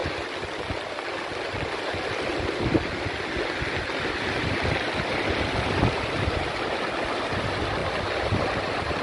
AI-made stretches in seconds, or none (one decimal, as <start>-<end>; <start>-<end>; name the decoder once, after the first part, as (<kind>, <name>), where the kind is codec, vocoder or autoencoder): none

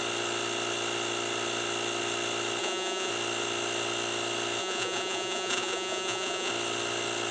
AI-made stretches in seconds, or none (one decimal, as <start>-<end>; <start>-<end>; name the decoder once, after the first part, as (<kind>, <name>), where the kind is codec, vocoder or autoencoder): 2.6-3.1 (vocoder, Vocos); 4.6-6.5